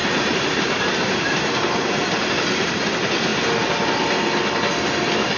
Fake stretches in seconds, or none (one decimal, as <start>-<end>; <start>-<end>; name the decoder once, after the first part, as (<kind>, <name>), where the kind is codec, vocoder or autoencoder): 0.0-2.9 (vocoder, BigVGAN v2)